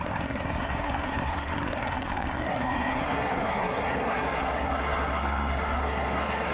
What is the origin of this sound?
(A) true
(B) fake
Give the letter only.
B